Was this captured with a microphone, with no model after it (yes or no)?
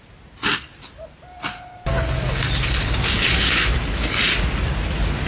yes